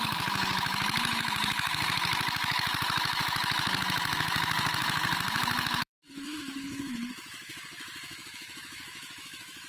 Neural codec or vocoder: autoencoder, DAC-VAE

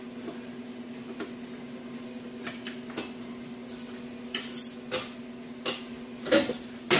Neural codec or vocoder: none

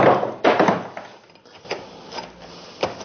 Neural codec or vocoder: none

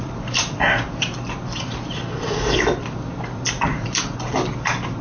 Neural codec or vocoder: vocoder, BigVGAN v2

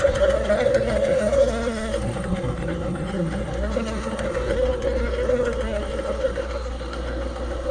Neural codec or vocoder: codec, SNAC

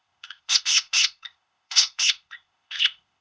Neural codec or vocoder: codec, ZipCodec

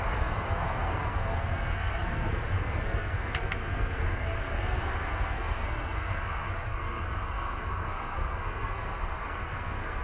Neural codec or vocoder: codec, SNAC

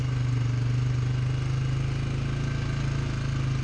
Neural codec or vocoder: none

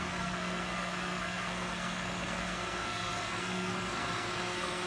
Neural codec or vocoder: codec, SNAC